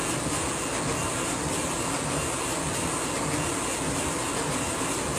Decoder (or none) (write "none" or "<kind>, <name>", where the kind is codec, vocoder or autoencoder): none